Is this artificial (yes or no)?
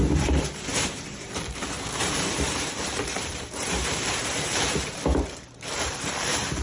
yes